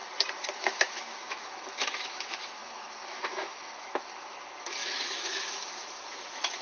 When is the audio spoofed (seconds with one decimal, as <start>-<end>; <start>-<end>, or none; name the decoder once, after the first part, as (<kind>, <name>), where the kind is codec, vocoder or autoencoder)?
0.6-6.6 (autoencoder, DAC-VAE)